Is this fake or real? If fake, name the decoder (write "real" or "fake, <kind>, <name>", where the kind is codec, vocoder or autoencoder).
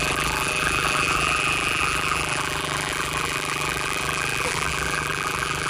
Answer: fake, vocoder, BigVGAN v2